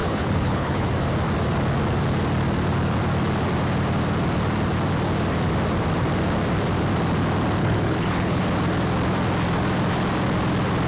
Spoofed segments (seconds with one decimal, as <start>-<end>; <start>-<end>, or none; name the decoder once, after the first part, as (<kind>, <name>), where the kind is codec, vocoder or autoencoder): 0.0-0.9 (codec, HILCodec); 7.6-8.4